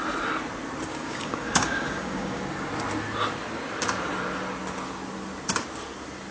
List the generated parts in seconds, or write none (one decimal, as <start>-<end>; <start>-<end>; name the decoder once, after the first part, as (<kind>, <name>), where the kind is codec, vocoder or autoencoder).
0.9-2.4 (codec, DAC)